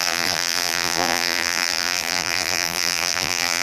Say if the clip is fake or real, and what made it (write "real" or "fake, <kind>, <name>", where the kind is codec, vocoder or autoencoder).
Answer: fake, vocoder, BigVGAN v2